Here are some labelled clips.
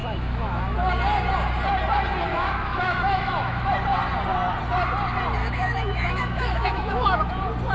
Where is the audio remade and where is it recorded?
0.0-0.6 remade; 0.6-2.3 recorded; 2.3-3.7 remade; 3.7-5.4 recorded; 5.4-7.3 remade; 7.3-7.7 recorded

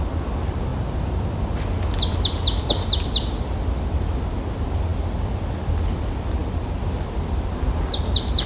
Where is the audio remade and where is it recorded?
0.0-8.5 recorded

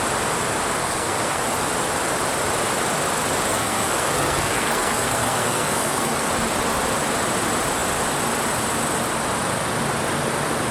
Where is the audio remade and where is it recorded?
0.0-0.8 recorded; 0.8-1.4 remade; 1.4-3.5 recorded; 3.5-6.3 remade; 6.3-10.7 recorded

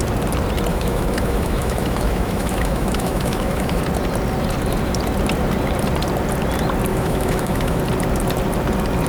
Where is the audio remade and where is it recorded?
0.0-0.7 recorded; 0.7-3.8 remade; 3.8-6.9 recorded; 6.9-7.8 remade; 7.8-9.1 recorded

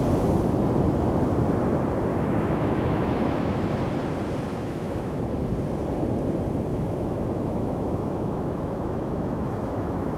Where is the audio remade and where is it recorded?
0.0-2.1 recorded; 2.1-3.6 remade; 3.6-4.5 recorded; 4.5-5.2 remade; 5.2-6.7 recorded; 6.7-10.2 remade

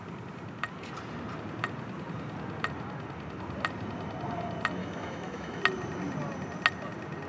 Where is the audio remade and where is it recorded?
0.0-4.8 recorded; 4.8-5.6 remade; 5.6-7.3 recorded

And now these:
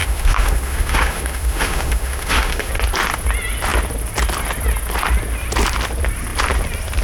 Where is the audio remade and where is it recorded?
0.0-2.7 remade; 2.7-7.0 recorded